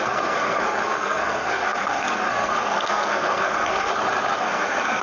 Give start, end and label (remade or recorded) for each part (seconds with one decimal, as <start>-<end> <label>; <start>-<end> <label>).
0.0-3.9 remade; 3.9-4.4 recorded; 4.4-5.0 remade